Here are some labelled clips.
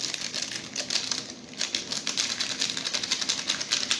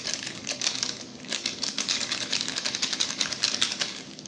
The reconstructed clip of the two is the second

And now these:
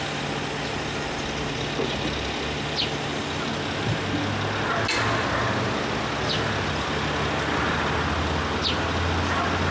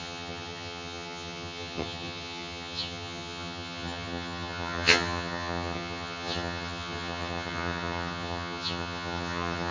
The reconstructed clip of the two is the second